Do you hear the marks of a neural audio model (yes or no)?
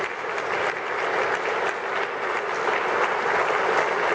no